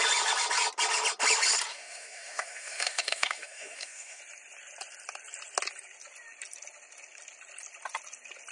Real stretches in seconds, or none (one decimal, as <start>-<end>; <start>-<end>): 0.0-1.7; 4.2-8.5